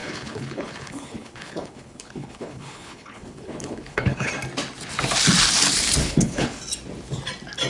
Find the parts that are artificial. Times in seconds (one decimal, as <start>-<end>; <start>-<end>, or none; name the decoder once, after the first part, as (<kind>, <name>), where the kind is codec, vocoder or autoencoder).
0.0-4.3 (codec, HILCodec); 6.0-6.6